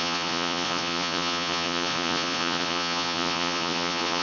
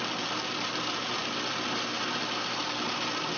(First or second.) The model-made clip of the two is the first